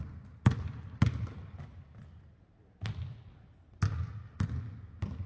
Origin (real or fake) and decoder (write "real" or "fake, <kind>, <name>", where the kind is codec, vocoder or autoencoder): real